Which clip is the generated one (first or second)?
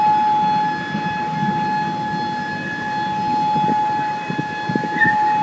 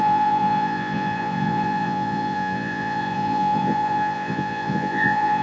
second